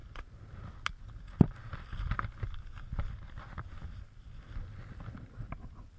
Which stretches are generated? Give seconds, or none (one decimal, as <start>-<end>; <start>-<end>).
none